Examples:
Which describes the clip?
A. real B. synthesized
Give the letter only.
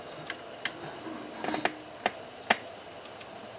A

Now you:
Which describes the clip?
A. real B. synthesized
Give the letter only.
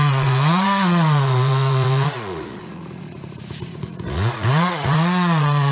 B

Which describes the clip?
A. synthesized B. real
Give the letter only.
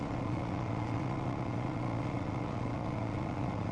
A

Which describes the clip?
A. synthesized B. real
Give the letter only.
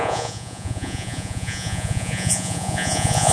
A